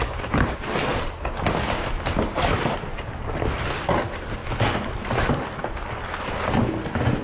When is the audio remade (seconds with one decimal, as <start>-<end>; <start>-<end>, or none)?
none